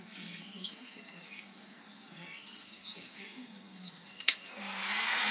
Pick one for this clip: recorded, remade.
remade